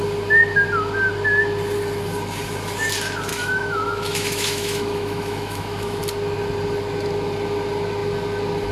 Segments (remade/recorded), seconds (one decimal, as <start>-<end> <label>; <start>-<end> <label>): 0.0-3.3 recorded; 3.3-6.0 remade; 6.0-8.7 recorded